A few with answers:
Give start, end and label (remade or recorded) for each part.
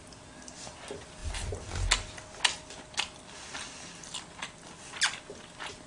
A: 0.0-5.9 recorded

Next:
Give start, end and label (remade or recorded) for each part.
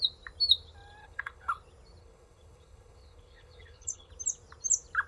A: 0.0-1.0 recorded; 1.0-1.6 remade; 1.6-2.0 recorded; 2.0-4.1 remade; 4.1-5.1 recorded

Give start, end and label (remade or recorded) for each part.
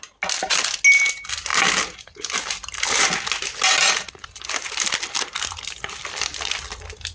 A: 0.0-7.1 recorded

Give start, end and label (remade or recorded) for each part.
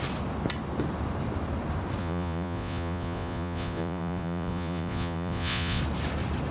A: 0.0-2.0 recorded; 2.0-5.8 remade; 5.8-6.5 recorded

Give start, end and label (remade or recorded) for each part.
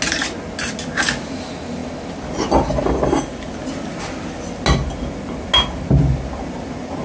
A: 0.0-7.0 recorded